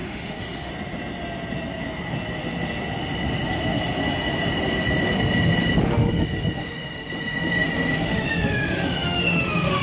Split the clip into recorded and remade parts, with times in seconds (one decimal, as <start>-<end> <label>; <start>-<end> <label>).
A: 0.0-0.7 remade; 0.7-5.8 recorded; 5.8-9.8 remade